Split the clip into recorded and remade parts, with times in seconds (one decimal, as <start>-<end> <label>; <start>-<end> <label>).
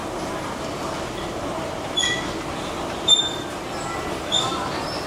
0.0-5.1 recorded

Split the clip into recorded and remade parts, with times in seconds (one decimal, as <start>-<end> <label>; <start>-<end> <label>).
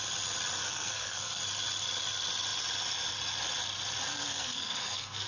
0.0-0.6 recorded; 0.6-1.4 remade; 1.4-4.1 recorded; 4.1-5.3 remade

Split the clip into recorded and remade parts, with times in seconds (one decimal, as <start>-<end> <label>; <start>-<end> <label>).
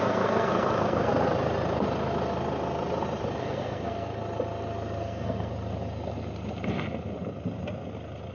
0.0-1.1 remade; 1.1-3.4 recorded; 3.4-4.1 remade; 4.1-5.0 recorded; 5.0-5.5 remade; 5.5-8.3 recorded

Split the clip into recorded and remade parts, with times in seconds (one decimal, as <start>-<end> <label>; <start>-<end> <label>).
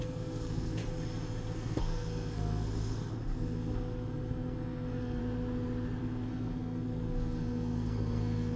0.0-0.8 remade; 0.8-1.5 recorded; 1.5-5.2 remade; 5.2-6.0 recorded; 6.0-8.6 remade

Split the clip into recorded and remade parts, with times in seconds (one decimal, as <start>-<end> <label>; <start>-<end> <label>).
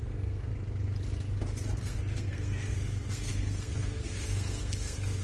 0.0-0.5 remade; 0.5-1.8 recorded; 1.8-5.2 remade